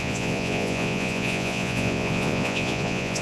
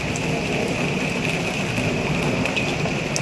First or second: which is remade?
first